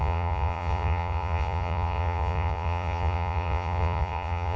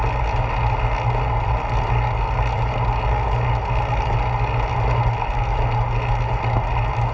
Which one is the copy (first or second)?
first